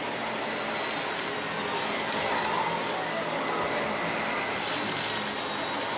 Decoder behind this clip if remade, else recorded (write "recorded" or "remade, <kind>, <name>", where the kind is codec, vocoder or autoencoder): recorded